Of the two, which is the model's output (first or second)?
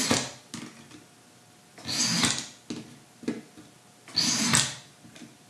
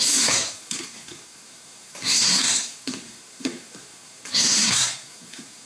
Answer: second